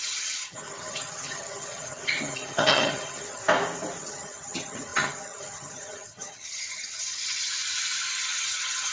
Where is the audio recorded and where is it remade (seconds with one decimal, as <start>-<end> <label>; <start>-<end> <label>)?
0.0-3.4 remade; 3.4-4.0 recorded; 4.0-7.6 remade; 7.6-8.2 recorded; 8.2-8.9 remade